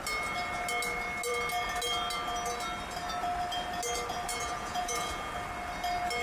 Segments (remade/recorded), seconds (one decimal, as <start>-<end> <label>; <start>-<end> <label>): 0.0-4.3 recorded; 4.3-5.3 remade; 5.3-6.2 recorded